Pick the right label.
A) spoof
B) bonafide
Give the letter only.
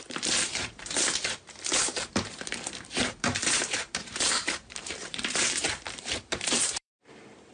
A